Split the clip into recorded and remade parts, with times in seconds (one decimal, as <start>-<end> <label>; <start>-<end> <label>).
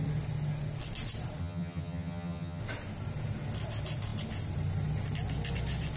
0.0-1.4 recorded; 1.4-2.6 remade; 2.6-6.0 recorded